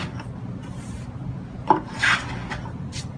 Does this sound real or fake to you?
real